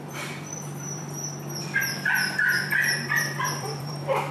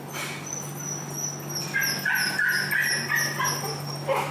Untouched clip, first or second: second